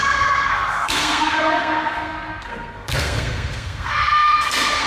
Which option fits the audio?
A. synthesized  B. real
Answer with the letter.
A